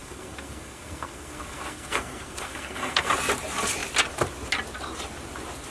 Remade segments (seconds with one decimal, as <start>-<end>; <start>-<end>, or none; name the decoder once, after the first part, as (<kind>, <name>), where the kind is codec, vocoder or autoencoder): 0.0-3.1 (codec, SNAC)